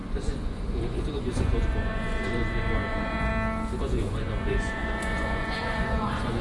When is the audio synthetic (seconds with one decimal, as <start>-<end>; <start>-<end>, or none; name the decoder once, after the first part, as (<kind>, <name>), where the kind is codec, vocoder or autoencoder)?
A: 0.0-3.3 (vocoder, Vocos); 3.8-6.4